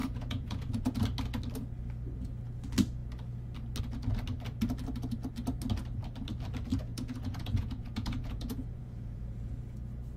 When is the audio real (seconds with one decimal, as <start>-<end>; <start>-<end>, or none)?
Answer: 1.0-6.7; 9.6-10.2